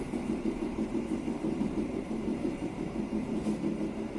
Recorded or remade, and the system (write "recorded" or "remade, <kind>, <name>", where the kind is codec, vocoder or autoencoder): remade, vocoder, BigVGAN v2